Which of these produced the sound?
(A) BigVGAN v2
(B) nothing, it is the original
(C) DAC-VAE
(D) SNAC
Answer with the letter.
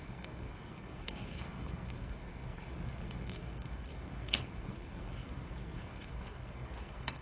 D